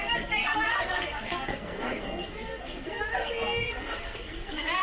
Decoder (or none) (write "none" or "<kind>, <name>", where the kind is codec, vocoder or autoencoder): codec, SNAC